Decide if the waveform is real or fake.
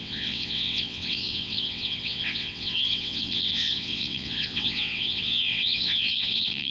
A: fake